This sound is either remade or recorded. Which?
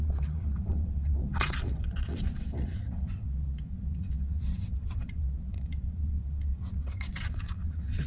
remade